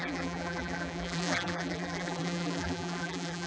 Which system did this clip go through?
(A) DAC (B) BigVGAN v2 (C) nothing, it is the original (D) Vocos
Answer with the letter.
B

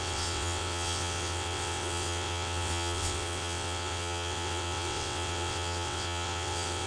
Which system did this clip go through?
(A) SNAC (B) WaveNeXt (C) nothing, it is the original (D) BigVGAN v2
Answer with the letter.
B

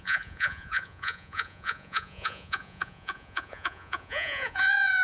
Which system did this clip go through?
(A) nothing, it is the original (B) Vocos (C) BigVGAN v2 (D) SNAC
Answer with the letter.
B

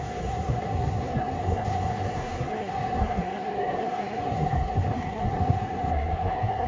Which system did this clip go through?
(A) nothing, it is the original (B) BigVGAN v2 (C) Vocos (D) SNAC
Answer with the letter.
D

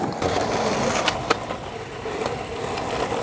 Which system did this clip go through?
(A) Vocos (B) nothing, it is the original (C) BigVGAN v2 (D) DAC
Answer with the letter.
C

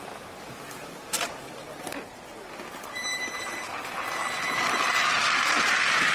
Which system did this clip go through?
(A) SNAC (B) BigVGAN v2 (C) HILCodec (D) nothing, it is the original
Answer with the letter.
B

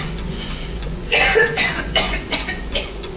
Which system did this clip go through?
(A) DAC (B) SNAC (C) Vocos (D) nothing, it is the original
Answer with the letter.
C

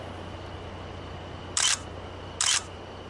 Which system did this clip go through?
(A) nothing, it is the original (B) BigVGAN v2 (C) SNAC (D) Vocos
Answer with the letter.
A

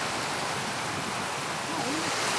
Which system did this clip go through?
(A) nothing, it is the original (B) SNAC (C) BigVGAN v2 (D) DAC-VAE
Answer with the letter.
A